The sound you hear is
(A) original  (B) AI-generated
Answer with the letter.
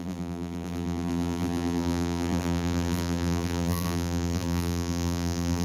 B